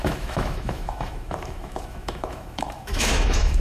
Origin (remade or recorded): remade